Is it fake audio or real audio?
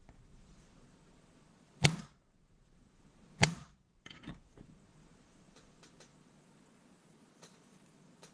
fake